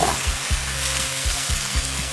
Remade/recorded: remade